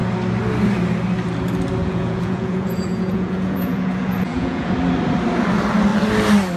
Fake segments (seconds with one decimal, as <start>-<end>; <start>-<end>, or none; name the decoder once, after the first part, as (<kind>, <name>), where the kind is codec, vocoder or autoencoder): 1.8-4.7 (vocoder, Vocos)